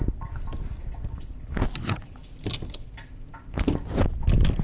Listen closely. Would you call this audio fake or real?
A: real